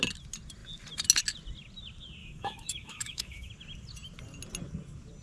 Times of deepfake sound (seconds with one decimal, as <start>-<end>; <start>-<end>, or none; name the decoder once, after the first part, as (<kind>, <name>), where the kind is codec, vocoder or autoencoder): 2.2-3.5 (autoencoder, DAC-VAE)